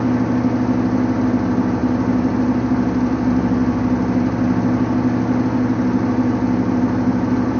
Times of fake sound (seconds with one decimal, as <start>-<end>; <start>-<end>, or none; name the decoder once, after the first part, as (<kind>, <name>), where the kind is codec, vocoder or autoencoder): none